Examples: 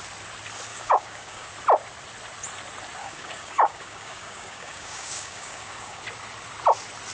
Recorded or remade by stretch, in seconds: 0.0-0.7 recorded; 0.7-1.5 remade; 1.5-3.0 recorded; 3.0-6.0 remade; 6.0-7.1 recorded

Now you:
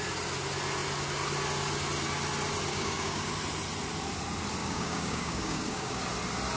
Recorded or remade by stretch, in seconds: 0.0-2.7 recorded; 2.7-3.3 remade; 3.3-4.6 recorded; 4.6-6.0 remade; 6.0-6.6 recorded

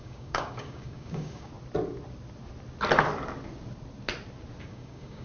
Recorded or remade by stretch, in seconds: 0.0-1.5 remade; 1.5-4.6 recorded; 4.6-5.2 remade

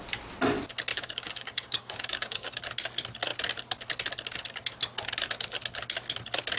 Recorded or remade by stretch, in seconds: 0.0-0.9 recorded; 0.9-2.6 remade; 2.6-6.6 recorded